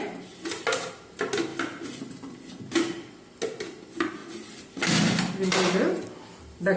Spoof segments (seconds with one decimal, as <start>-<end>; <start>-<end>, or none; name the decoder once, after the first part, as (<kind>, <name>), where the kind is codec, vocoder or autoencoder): none